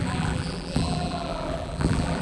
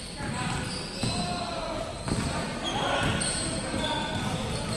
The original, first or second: second